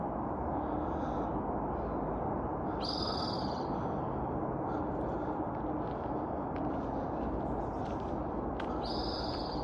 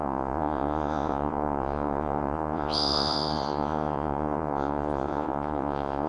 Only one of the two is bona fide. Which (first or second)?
first